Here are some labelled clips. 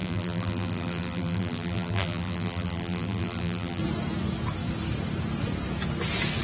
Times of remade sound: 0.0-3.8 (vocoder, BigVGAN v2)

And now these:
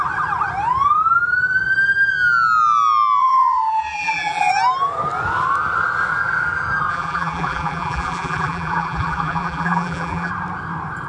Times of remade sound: 3.2-4.5 (vocoder, BigVGAN v2); 6.9-10.3

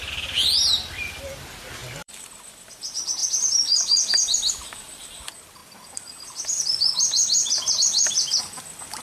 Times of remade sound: 1.8-2.7 (vocoder, BigVGAN v2)

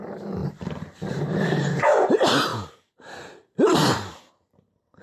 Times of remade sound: 0.0-5.0 (vocoder, BigVGAN v2)

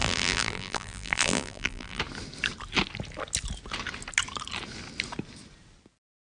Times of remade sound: 0.0-2.0 (vocoder, BigVGAN v2)